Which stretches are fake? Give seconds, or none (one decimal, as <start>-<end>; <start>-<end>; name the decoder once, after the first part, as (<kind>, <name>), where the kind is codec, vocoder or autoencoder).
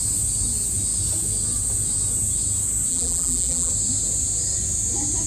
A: 2.9-3.7 (vocoder, BigVGAN v2)